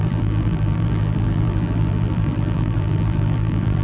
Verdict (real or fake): fake